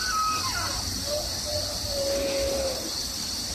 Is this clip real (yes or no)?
yes